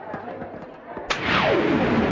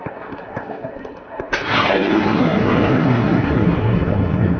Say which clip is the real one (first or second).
first